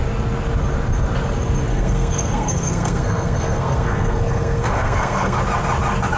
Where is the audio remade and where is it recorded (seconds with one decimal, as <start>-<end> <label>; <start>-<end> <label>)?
0.0-1.7 recorded; 1.7-5.4 remade; 5.4-6.2 recorded